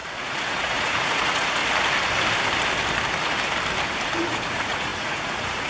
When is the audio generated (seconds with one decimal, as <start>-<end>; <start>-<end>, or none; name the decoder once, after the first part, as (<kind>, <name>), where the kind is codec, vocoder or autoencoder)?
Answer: 0.0-1.6 (vocoder, Vocos); 4.2-5.7